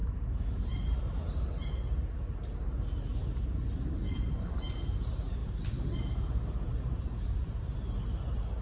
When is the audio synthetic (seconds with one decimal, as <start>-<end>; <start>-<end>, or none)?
3.9-8.6